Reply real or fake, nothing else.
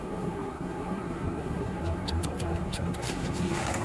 fake